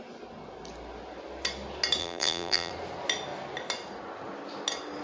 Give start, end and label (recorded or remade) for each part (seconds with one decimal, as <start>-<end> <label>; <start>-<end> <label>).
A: 0.0-2.0 recorded; 2.0-2.7 remade; 2.7-5.0 recorded